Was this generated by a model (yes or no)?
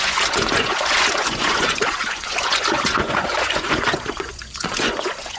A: yes